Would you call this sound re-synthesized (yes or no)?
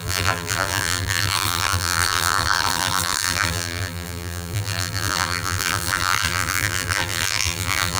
yes